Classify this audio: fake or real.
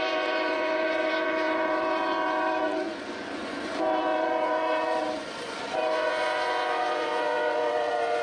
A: fake